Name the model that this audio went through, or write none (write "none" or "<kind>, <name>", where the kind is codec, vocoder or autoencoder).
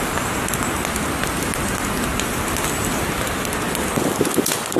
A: none